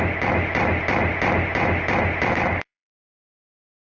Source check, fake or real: fake